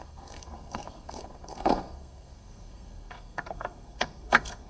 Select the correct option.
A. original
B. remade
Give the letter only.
B